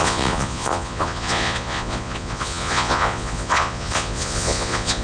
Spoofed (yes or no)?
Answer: yes